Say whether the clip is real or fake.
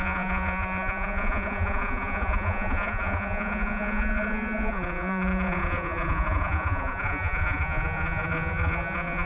fake